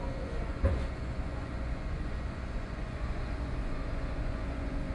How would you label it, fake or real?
fake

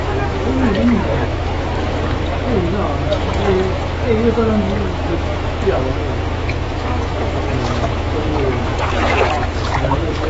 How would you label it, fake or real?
fake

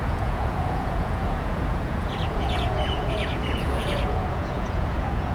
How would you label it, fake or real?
fake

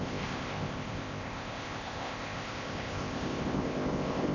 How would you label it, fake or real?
fake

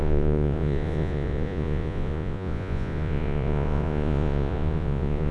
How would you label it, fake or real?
fake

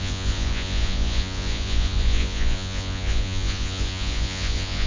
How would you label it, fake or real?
fake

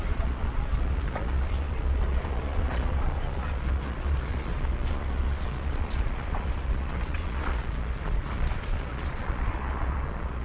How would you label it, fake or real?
fake